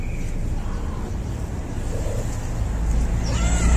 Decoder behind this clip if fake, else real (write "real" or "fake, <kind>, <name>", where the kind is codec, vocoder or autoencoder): real